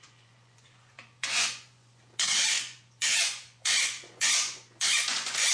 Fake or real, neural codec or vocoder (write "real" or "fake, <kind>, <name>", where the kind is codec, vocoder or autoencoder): fake, vocoder, Vocos